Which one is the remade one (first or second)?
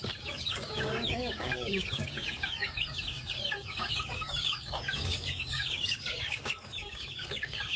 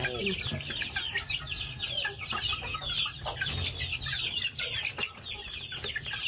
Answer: first